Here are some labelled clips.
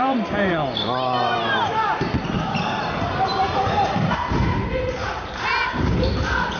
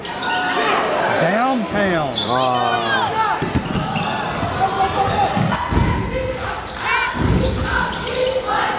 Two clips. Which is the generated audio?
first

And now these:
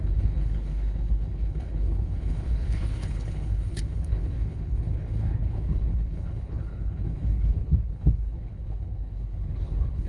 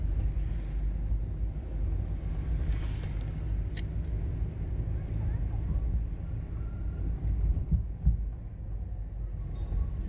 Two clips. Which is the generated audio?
first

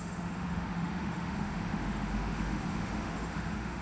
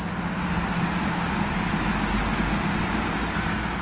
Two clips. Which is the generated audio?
first